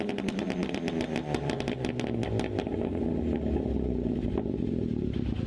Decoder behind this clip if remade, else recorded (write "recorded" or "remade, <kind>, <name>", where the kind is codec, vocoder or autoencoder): recorded